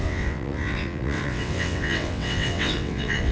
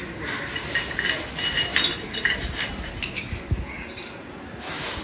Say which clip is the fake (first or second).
first